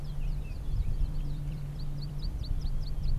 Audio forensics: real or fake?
fake